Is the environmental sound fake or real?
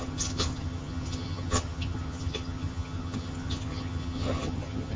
fake